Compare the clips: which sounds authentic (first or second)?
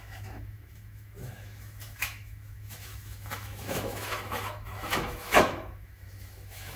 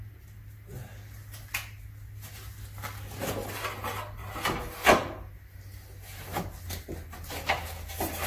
second